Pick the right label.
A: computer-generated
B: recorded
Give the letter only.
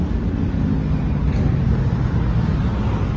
B